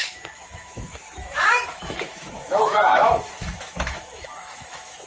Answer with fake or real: fake